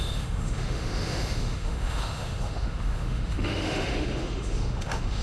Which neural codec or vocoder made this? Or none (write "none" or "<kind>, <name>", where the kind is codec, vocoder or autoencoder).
autoencoder, DAC-VAE